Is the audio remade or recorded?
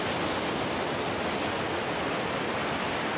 recorded